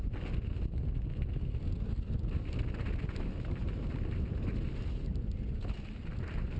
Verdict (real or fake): real